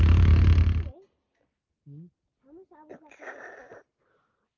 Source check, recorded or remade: recorded